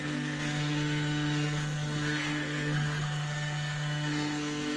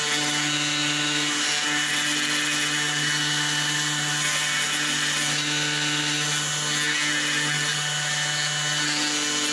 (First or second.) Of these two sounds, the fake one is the first